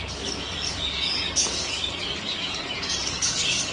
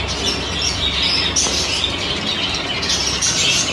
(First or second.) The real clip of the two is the second